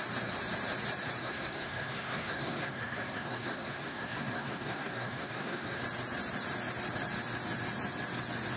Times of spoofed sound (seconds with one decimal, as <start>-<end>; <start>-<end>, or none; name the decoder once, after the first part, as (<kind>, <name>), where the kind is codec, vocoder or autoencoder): 1.2-5.8 (codec, SNAC)